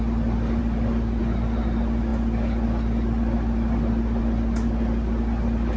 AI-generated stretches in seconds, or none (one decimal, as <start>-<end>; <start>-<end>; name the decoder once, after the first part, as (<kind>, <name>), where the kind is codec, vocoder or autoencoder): none